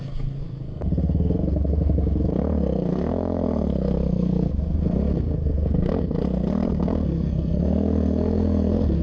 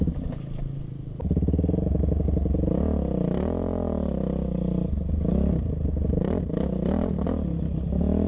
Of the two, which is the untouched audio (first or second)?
second